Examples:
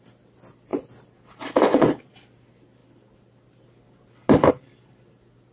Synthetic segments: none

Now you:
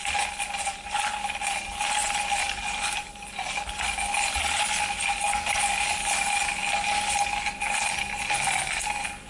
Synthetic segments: none

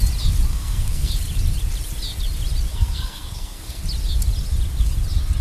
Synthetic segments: 0.5-1.1 (codec, SNAC); 2.7-3.8

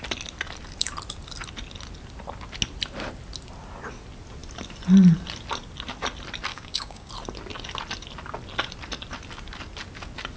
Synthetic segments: 6.5-7.1 (codec, DAC)

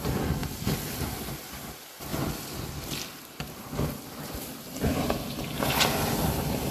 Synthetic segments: none